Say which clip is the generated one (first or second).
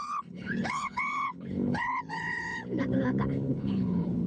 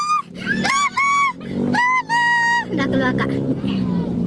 first